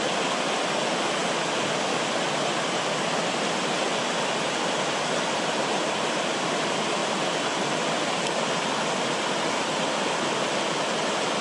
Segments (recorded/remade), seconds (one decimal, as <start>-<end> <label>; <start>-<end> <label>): 0.0-11.4 recorded